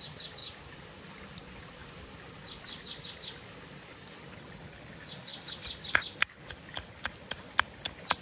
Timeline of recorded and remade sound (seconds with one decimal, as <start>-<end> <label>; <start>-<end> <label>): 0.0-1.8 recorded; 1.8-3.1 remade; 3.1-5.3 recorded; 5.3-6.0 remade; 6.0-8.2 recorded